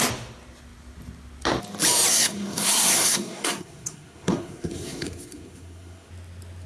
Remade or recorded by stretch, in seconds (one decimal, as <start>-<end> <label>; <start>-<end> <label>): 0.0-2.1 recorded; 2.1-6.1 remade; 6.1-6.7 recorded